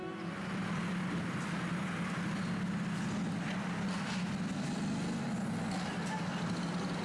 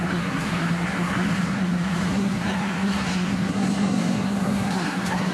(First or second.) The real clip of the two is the first